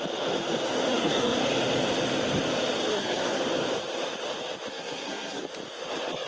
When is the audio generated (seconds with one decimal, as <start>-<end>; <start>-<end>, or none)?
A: 0.9-1.4; 2.9-3.4; 4.7-5.4